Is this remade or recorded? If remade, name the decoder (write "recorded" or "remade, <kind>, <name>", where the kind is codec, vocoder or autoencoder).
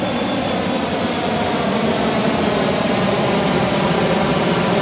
remade, vocoder, BigVGAN v2